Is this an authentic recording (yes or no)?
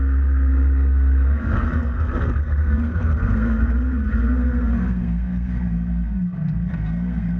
no